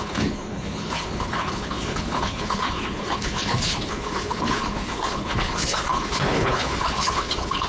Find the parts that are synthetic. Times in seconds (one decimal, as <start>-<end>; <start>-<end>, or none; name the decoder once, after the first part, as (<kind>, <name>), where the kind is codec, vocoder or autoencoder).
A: 0.0-7.7 (codec, HILCodec)